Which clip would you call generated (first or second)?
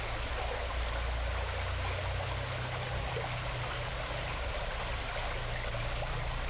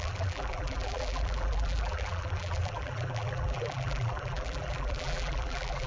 second